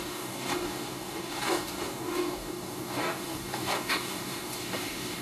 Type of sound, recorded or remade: remade